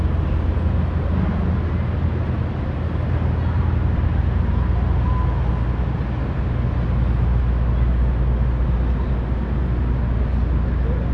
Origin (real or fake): real